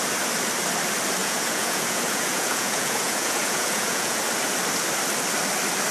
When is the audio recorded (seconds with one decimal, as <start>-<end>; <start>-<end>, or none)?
0.0-1.2; 4.2-5.9